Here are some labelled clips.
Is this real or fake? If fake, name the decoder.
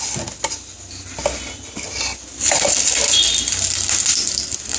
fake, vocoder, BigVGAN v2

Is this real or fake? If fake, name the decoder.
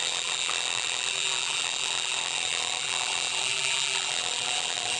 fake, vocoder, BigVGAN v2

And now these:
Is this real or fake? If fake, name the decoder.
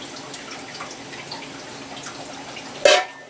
real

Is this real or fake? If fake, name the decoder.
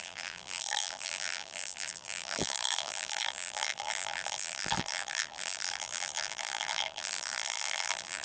fake, vocoder, BigVGAN v2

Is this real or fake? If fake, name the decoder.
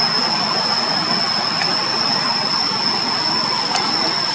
real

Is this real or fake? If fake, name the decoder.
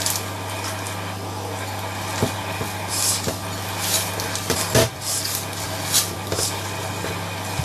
real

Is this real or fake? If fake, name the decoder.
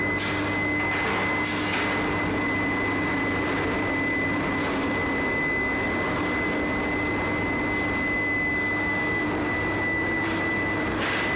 real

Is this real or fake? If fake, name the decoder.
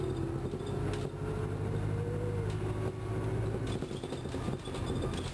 real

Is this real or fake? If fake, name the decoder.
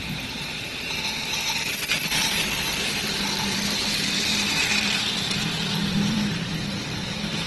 fake, vocoder, BigVGAN v2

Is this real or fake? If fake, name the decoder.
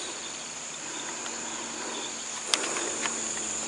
real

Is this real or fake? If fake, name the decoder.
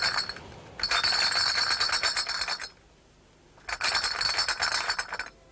real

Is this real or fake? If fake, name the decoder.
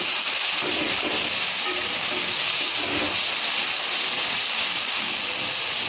real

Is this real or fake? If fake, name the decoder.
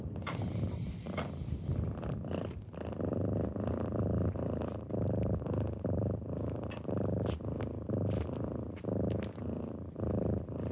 fake, vocoder, BigVGAN v2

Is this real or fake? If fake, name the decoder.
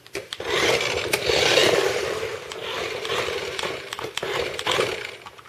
fake, vocoder, BigVGAN v2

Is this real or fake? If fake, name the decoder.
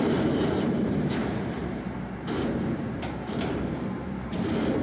fake, vocoder, BigVGAN v2